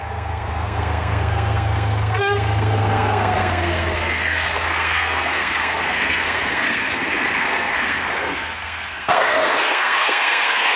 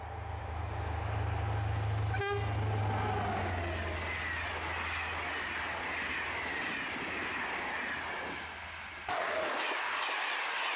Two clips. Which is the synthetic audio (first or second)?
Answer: first